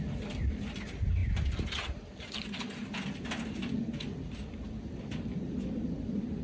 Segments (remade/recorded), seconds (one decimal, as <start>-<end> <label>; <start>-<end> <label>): 0.0-1.2 recorded; 1.2-2.3 remade; 2.3-6.4 recorded